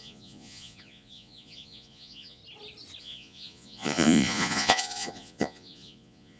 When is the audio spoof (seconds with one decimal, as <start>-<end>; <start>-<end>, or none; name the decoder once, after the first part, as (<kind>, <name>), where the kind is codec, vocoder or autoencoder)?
0.0-2.4 (vocoder, Vocos); 3.0-6.4